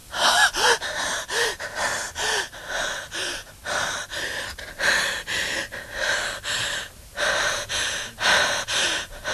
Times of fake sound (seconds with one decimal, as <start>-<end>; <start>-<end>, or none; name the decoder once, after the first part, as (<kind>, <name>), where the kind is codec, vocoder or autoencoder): 0.7-3.6 (vocoder, BigVGAN v2); 6.0-9.3